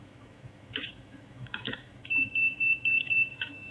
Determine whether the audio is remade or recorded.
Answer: remade